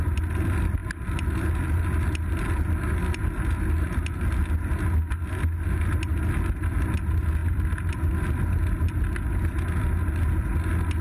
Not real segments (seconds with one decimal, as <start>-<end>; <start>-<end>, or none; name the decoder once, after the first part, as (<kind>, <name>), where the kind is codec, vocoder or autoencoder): none

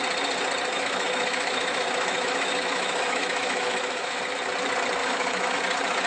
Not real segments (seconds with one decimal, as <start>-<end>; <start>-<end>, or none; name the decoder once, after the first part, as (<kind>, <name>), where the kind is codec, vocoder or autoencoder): 0.7-4.2 (autoencoder, DAC-VAE); 5.0-5.6

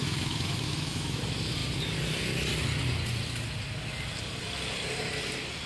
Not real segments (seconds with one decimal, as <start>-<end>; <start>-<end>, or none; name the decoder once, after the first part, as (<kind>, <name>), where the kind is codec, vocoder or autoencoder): 0.0-1.2 (autoencoder, DAC-VAE)

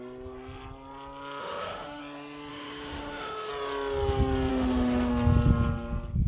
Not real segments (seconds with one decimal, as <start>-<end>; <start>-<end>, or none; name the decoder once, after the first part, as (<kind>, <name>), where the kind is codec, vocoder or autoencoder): 1.4-2.0 (autoencoder, DAC-VAE); 2.5-3.5; 4.5-5.1

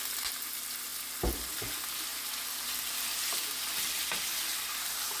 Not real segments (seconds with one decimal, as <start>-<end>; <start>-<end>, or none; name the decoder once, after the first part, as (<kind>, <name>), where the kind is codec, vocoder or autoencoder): none

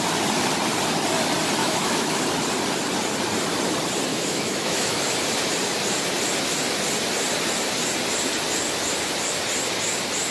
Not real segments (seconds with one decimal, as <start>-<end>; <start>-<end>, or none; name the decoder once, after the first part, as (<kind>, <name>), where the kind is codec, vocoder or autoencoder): 1.6-2.2 (autoencoder, DAC-VAE); 4.1-5.0